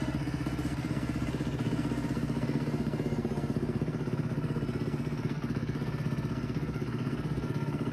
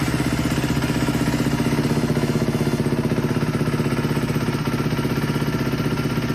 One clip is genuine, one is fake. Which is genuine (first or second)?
second